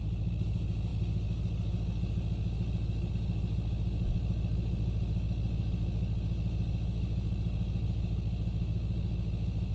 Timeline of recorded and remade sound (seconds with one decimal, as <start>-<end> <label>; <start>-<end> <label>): 0.0-9.7 recorded